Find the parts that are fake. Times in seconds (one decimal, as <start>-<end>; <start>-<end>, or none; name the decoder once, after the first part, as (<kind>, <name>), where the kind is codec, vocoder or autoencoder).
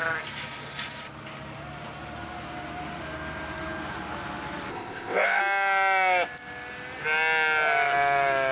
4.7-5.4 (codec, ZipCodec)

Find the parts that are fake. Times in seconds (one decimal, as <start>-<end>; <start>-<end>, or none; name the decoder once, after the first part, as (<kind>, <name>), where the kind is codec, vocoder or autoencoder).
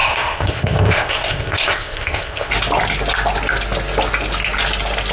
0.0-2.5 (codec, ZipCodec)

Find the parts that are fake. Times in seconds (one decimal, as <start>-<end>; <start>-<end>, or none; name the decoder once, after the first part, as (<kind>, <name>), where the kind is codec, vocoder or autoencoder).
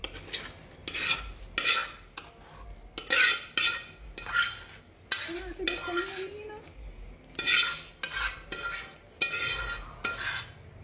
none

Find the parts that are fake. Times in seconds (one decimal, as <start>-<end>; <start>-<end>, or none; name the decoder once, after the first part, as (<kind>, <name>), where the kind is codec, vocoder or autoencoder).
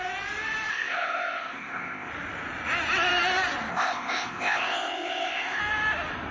0.7-2.1 (codec, ZipCodec); 3.7-5.6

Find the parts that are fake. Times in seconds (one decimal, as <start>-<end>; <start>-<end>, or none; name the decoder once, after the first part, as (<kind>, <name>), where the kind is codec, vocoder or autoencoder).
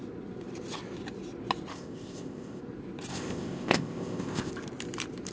1.7-2.6 (codec, ZipCodec); 3.1-4.5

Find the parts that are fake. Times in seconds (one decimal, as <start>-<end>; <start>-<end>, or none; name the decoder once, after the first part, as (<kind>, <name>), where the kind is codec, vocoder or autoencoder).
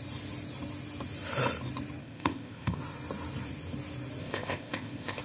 2.0-2.8 (codec, ZipCodec); 4.2-5.2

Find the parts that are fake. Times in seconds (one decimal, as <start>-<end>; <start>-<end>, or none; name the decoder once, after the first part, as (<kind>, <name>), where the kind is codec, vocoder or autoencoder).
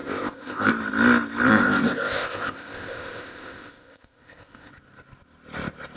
0.0-0.7 (codec, ZipCodec); 1.5-4.7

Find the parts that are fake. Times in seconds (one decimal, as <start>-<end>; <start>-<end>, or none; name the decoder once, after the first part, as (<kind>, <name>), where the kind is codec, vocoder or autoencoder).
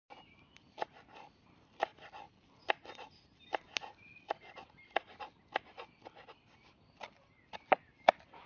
none